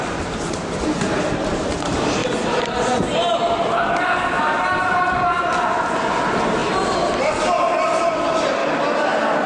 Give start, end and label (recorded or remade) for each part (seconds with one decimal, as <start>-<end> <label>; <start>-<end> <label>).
0.0-2.2 remade; 2.2-4.8 recorded; 4.8-8.6 remade; 8.6-9.5 recorded